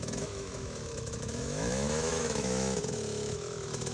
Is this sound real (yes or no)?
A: no